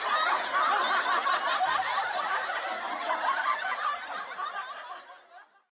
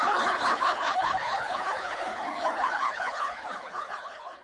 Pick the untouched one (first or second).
first